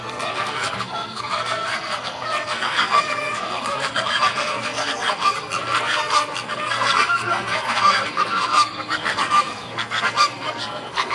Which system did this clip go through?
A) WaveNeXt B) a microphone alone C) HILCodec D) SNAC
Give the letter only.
D